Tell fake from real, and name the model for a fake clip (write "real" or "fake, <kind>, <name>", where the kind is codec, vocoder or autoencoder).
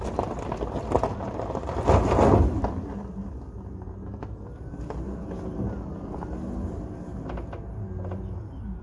real